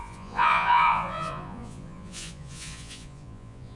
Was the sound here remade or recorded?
remade